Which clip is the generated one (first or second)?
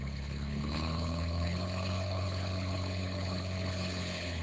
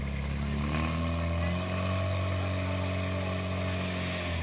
first